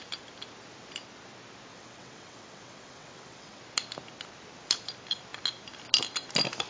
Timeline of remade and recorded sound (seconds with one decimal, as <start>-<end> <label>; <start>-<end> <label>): 0.0-1.7 recorded; 1.7-3.6 remade; 3.6-6.7 recorded